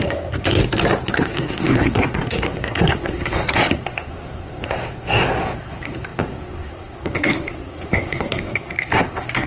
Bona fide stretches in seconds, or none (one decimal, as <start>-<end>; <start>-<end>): 0.6-1.1